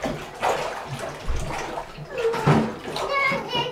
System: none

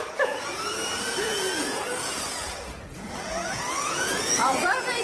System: vocoder, Vocos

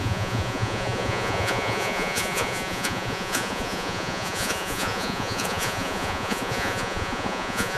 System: vocoder, Vocos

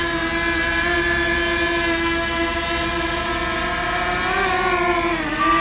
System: none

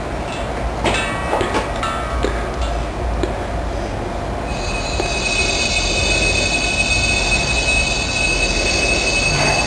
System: none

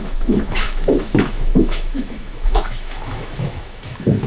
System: autoencoder, DAC-VAE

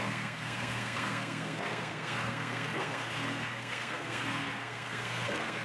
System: codec, SNAC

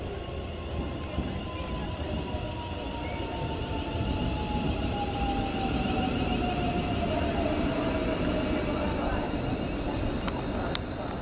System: none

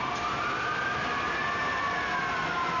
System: none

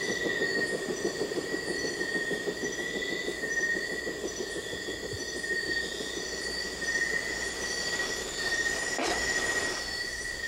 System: none